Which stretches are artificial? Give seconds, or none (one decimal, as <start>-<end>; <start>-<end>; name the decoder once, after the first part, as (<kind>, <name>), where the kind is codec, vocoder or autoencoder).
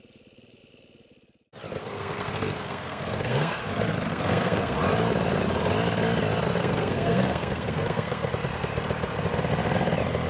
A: 1.8-3.6 (codec, SNAC); 4.1-4.8; 6.6-8.3